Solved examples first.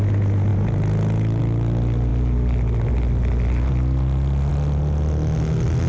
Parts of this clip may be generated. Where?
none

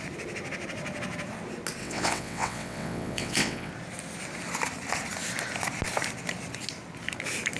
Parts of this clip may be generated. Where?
1.8-3.7 (vocoder, WaveNeXt)